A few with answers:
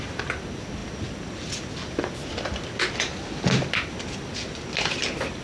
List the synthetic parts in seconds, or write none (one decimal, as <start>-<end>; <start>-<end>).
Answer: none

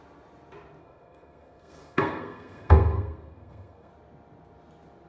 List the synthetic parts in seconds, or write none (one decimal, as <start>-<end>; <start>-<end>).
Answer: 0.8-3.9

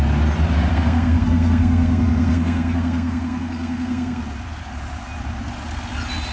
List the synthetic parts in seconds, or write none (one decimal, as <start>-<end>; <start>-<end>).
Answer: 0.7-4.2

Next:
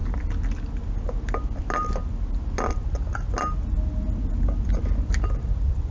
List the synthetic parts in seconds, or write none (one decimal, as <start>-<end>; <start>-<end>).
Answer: none

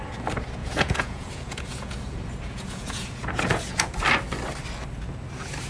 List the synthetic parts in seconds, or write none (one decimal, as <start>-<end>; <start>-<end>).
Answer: 0.6-4.0